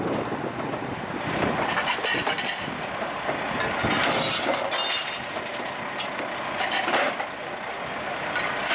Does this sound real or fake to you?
real